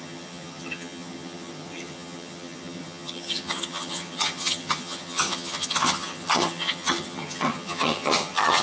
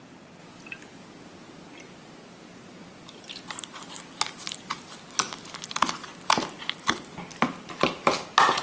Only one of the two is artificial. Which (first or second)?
first